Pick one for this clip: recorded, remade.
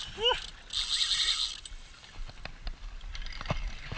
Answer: recorded